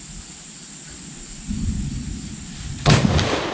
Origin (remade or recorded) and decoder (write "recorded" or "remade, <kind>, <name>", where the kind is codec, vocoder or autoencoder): recorded